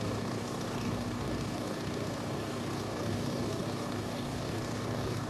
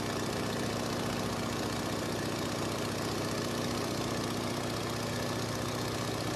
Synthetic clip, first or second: first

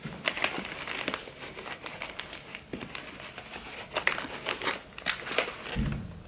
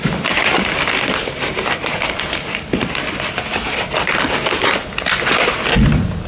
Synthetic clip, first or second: second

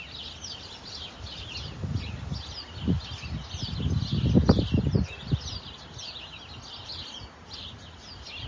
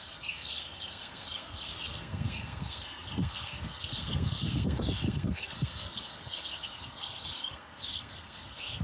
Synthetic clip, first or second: second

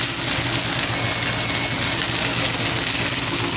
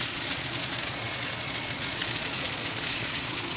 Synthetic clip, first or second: second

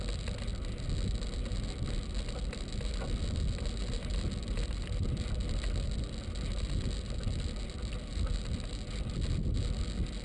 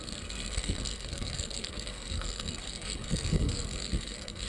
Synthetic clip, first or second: second